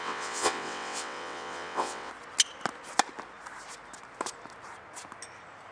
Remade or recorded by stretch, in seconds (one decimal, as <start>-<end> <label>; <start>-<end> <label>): 0.0-2.1 remade; 2.1-5.7 recorded

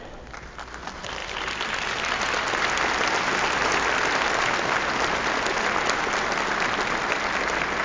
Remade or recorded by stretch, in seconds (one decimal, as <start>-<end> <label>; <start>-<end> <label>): 0.0-7.8 recorded